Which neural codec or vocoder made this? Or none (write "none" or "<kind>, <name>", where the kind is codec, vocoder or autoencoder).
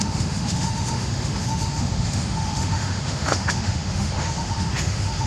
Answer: autoencoder, DAC-VAE